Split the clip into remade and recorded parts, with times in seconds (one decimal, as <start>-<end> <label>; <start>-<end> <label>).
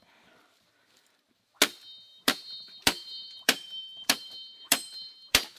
0.0-2.1 recorded; 2.1-5.6 remade